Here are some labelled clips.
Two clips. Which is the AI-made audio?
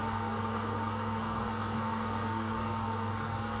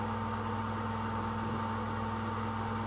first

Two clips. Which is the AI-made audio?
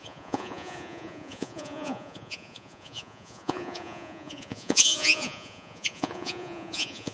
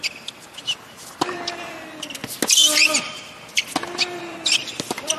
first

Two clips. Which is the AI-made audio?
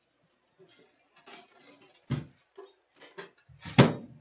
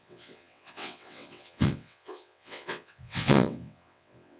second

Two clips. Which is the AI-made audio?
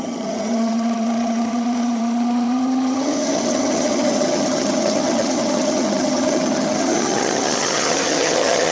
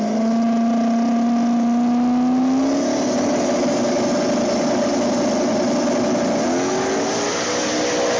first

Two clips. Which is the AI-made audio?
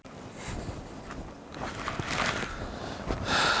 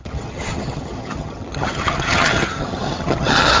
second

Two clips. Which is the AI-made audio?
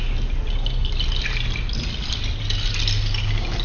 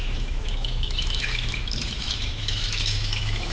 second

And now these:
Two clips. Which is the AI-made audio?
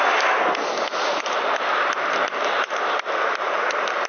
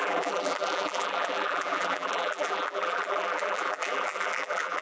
second